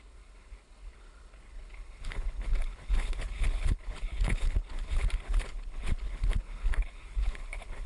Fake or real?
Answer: fake